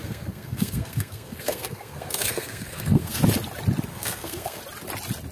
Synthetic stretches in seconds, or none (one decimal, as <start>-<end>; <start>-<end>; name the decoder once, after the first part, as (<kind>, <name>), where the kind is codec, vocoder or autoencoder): 0.0-3.2 (codec, SNAC); 3.9-4.6